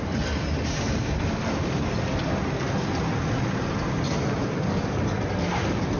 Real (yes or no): yes